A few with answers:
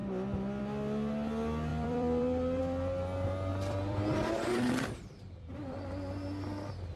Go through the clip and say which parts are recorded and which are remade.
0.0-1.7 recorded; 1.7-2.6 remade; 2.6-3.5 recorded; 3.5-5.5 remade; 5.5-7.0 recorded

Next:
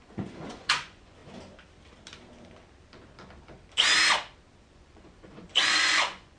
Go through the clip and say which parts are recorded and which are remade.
0.0-1.2 remade; 1.2-4.6 recorded; 4.6-6.4 remade